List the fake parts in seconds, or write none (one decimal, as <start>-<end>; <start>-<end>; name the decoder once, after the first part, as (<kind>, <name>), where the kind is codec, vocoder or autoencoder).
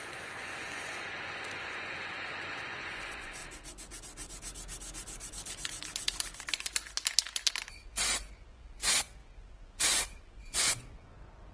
0.0-3.4 (vocoder, Vocos); 7.7-11.5